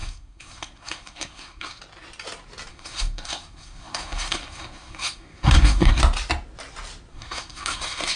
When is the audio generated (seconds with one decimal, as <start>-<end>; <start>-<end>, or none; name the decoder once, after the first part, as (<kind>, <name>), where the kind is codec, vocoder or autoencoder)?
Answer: 0.0-1.8 (codec, SNAC); 2.7-6.0; 7.1-8.2